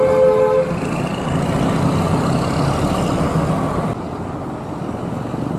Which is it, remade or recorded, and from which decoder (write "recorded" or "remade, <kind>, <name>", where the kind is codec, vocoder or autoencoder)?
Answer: recorded